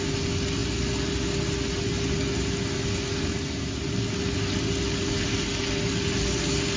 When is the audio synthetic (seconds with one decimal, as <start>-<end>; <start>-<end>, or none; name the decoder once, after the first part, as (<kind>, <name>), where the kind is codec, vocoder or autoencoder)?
none